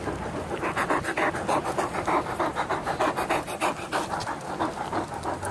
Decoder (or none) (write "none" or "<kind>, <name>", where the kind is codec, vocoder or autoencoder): none